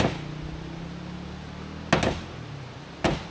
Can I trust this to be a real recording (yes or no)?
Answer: yes